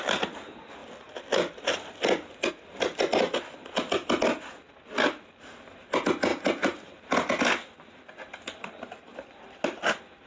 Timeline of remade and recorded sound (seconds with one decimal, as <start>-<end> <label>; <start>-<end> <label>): 0.0-6.3 recorded; 6.3-7.1 remade; 7.1-10.3 recorded